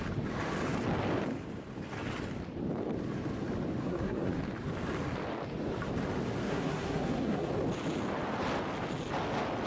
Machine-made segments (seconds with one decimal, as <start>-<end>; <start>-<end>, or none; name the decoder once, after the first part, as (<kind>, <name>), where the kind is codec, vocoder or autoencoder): 3.8-4.3 (codec, SNAC); 6.4-7.5